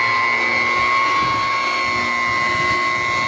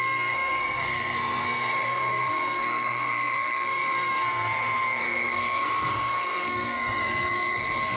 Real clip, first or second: first